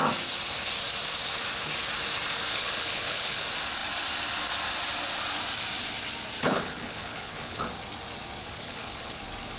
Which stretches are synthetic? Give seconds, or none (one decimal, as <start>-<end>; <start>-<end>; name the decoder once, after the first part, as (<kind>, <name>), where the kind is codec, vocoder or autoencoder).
2.5-3.4 (codec, HILCodec); 6.4-7.7; 8.4-9.2